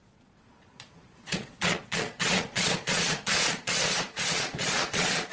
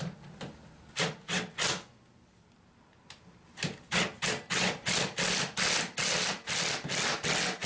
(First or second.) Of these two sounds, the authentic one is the second